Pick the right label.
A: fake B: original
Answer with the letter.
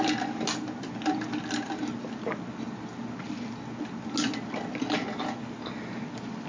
B